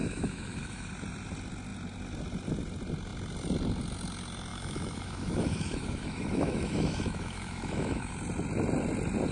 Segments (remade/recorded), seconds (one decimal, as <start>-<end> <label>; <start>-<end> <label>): 0.0-0.9 remade; 0.9-4.5 recorded; 4.5-8.1 remade; 8.1-9.3 recorded